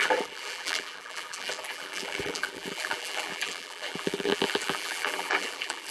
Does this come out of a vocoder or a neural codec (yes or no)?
yes